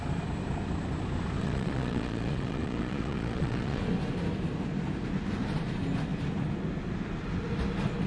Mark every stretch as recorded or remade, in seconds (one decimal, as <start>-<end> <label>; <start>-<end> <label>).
0.0-1.4 recorded; 1.4-3.8 remade; 3.8-8.1 recorded